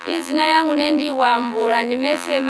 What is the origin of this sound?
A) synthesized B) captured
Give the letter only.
A